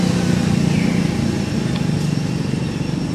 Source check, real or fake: real